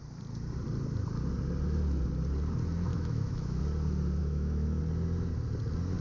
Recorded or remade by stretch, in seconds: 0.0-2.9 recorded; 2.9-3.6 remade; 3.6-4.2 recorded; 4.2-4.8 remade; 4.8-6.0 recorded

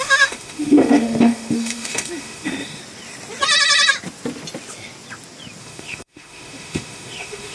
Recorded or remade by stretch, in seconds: 0.0-2.8 remade; 2.8-5.6 recorded; 5.6-7.5 remade

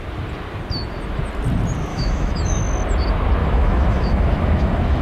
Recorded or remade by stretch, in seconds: 0.0-1.9 recorded; 1.9-2.6 remade; 2.6-3.4 recorded; 3.4-5.0 remade

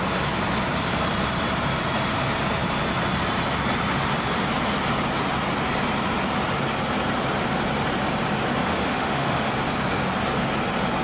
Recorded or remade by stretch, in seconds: 0.0-8.6 recorded; 8.6-9.5 remade; 9.5-11.0 recorded

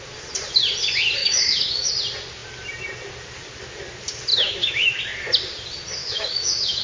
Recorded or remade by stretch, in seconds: 0.0-1.2 recorded; 1.2-1.9 remade; 1.9-4.3 recorded; 4.3-5.0 remade; 5.0-6.0 recorded; 6.0-6.8 remade

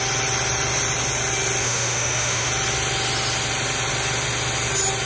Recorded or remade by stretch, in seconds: 0.0-1.6 recorded; 1.6-2.5 remade; 2.5-5.1 recorded

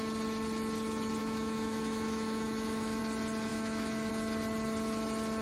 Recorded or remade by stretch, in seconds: 0.0-1.2 recorded; 1.2-3.0 remade; 3.0-3.5 recorded; 3.5-4.1 remade; 4.1-5.4 recorded

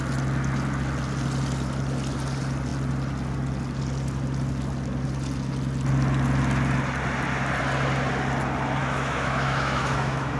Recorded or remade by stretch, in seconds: 0.0-8.8 recorded; 8.8-10.4 remade